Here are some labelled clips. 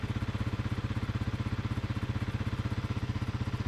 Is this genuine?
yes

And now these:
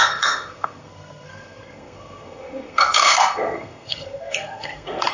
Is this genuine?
no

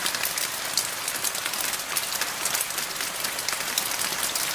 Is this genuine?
yes